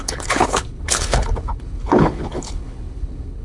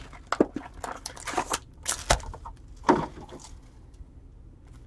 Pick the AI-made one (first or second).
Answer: first